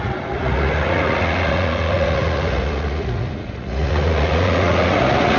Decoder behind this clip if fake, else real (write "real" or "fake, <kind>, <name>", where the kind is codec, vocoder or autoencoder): fake, vocoder, Vocos